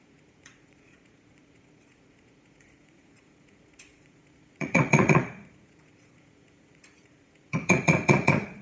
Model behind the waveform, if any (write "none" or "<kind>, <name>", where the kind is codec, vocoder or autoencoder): vocoder, Vocos